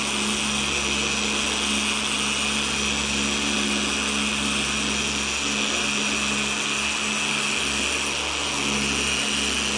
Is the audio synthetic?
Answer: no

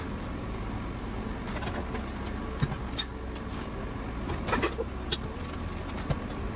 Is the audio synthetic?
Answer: no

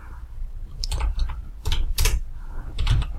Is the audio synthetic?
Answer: yes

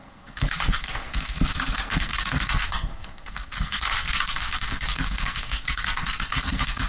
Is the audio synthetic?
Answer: yes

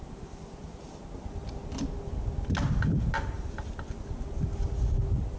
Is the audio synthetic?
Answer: no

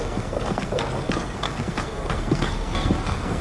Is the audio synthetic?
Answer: yes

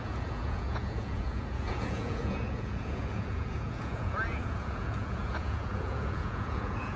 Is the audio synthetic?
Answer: yes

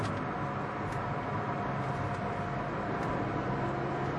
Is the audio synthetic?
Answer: no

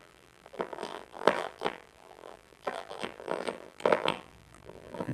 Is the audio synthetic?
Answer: yes